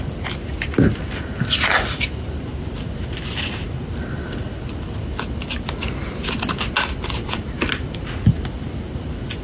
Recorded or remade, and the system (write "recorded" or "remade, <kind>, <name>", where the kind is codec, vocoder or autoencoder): recorded